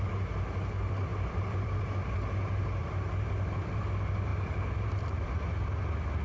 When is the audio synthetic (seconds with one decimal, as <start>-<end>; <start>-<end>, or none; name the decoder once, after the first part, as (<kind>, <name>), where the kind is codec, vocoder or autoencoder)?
1.1-1.8 (vocoder, BigVGAN v2); 2.8-3.8; 4.3-5.3